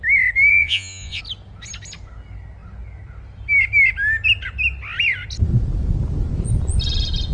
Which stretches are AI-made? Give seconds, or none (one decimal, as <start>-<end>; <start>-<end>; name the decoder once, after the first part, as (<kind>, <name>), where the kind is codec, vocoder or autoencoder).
0.5-1.2 (vocoder, Vocos)